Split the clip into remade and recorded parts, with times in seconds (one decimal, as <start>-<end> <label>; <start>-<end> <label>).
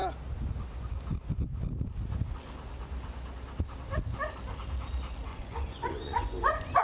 0.0-5.3 recorded; 5.3-6.8 remade